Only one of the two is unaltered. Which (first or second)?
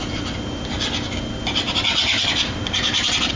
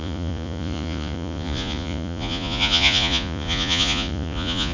first